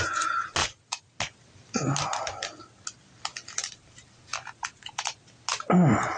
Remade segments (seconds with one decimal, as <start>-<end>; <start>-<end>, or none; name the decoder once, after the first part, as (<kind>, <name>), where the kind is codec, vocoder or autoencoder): 0.6-1.2 (vocoder, BigVGAN v2); 3.6-5.2